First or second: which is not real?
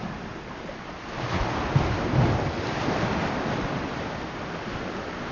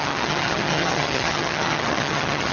second